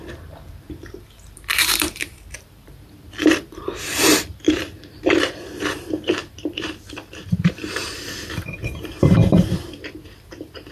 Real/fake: fake